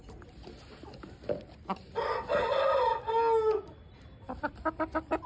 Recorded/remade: recorded